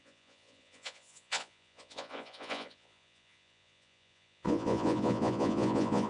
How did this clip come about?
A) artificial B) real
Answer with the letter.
A